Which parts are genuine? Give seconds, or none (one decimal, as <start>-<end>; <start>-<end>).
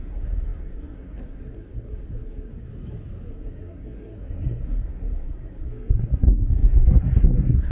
2.7-3.3